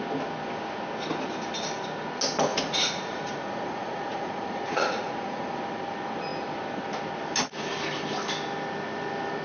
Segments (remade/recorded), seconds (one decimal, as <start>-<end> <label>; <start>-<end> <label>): 0.0-2.5 recorded; 2.5-5.6 remade; 5.6-9.4 recorded